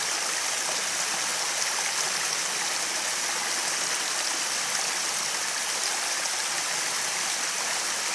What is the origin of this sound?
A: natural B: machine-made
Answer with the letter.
A